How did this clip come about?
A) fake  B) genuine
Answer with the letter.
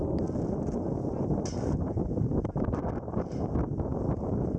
B